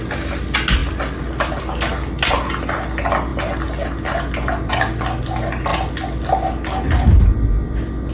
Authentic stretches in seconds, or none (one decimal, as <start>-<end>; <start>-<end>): 0.0-8.1

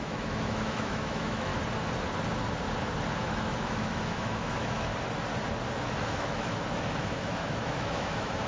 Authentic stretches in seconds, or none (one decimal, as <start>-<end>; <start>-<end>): 1.5-3.2; 4.9-6.0

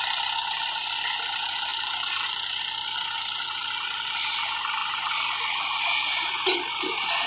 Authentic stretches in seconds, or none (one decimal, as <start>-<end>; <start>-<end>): 0.0-1.7; 2.6-3.6; 4.3-7.3

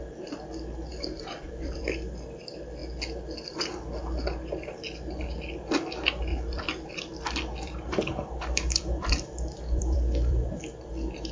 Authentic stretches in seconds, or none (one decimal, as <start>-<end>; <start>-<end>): 0.0-0.9; 1.8-6.3; 10.5-11.3

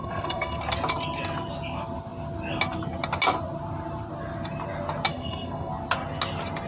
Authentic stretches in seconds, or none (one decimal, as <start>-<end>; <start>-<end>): 0.6-5.1; 5.7-6.7